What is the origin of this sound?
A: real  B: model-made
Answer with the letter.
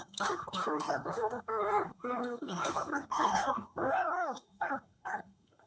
B